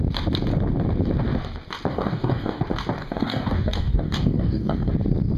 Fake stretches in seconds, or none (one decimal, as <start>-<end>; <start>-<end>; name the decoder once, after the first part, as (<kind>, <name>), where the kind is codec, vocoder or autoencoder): 1.9-2.6 (codec, DAC); 3.0-4.9